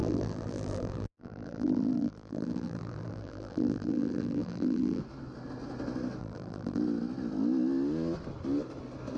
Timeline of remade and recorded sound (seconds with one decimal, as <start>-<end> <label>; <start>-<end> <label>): 0.0-5.0 remade; 5.0-6.2 recorded; 6.2-6.8 remade; 6.8-9.2 recorded